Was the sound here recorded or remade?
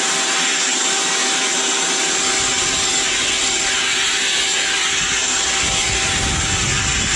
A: recorded